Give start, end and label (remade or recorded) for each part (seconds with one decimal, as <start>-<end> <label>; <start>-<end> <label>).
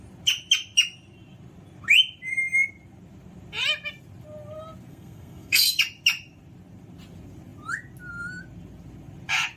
0.0-4.9 recorded; 4.9-5.8 remade; 5.8-9.6 recorded